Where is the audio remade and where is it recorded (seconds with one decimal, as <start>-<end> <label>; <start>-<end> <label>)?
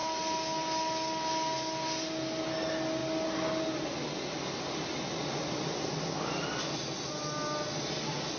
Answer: 0.0-8.4 recorded